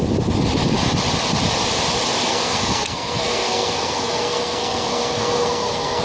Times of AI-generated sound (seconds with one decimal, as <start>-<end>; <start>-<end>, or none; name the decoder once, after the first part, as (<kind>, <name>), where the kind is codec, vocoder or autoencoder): 2.3-6.0 (codec, SNAC)